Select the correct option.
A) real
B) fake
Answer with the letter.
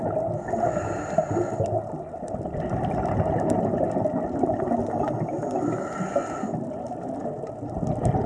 A